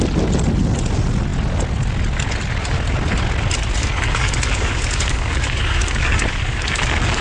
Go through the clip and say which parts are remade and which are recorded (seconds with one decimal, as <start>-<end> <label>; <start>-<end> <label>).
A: 0.0-3.8 recorded; 3.8-7.2 remade